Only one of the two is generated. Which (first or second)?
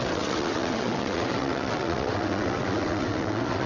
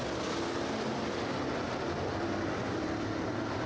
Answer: first